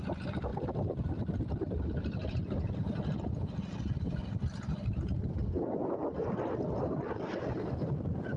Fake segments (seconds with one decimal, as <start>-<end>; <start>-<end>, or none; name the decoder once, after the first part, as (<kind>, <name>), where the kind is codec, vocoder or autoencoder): none